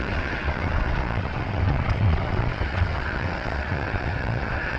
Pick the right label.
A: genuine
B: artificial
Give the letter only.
B